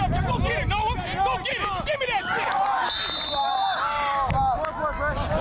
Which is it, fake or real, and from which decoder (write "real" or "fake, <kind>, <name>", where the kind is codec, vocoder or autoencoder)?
real